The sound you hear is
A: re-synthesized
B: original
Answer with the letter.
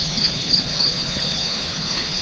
A